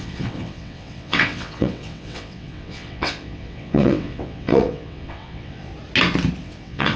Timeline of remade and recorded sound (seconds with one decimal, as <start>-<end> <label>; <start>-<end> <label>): 0.0-5.7 remade; 5.7-6.4 recorded; 6.4-7.0 remade